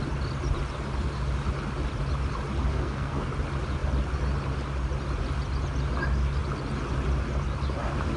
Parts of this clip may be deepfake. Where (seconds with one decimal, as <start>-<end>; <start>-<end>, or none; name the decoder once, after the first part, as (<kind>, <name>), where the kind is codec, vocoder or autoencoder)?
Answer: 2.7-3.3 (codec, SNAC)